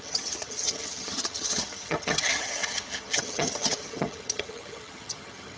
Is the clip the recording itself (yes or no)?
no